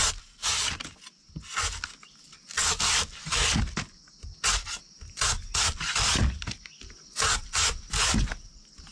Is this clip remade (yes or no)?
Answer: no